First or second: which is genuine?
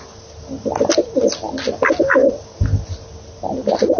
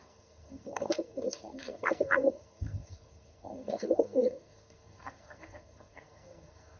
first